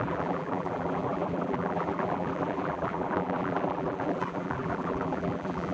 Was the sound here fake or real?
fake